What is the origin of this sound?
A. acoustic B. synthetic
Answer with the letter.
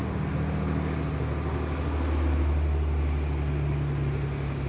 A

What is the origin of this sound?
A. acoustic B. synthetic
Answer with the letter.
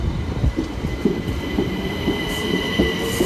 B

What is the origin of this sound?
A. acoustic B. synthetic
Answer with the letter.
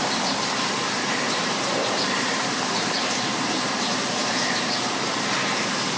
B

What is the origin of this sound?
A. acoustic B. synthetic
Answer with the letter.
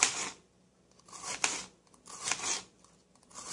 A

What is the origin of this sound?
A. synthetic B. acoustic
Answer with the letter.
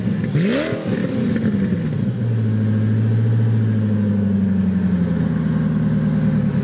B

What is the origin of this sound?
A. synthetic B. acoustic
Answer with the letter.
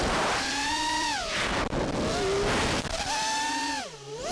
A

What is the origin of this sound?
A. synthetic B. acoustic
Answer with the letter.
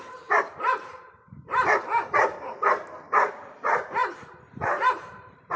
A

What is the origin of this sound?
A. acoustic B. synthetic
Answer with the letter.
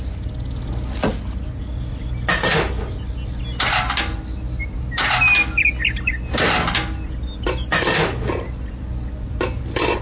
A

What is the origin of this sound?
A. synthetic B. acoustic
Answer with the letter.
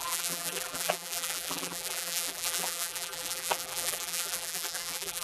A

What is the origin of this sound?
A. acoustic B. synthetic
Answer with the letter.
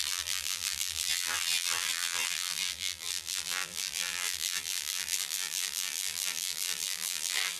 B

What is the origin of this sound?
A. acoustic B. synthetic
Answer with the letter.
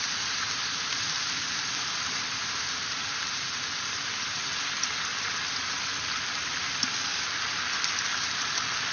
B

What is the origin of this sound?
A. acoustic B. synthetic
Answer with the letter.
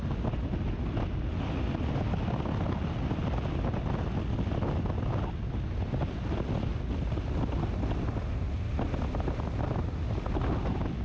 A